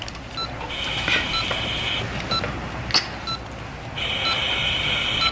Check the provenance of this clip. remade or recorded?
recorded